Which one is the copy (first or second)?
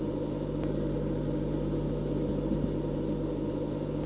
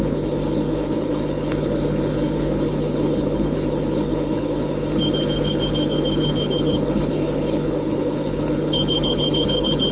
second